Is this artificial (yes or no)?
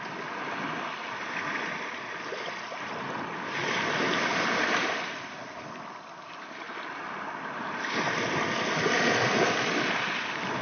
no